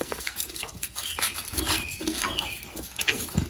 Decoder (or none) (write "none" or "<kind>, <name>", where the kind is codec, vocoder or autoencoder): codec, SNAC